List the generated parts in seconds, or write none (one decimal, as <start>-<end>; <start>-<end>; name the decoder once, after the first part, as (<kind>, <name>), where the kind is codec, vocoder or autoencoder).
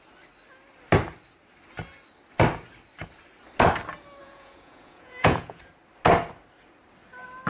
4.2-5.6 (vocoder, Vocos)